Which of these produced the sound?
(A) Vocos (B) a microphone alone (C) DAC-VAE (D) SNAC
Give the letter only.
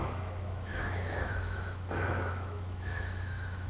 C